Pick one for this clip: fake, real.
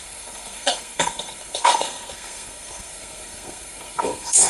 fake